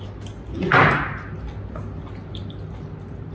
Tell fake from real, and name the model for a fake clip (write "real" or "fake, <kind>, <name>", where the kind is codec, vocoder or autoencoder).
real